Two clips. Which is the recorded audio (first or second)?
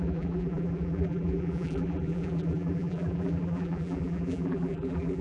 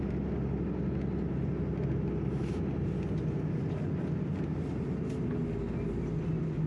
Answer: second